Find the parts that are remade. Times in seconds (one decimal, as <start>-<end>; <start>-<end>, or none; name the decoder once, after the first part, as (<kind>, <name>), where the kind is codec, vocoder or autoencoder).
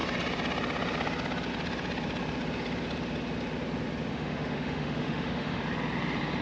4.1-5.6 (autoencoder, DAC-VAE)